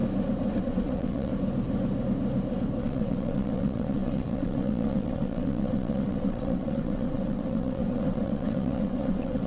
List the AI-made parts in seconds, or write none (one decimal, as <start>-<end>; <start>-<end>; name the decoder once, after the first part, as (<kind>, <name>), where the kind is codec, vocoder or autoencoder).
0.6-1.3 (vocoder, WaveNeXt); 2.8-9.5